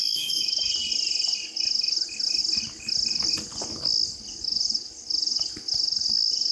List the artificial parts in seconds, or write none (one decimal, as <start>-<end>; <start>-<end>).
0.0-0.7